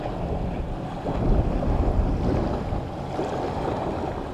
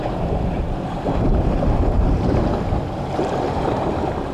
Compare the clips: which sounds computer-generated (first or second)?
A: second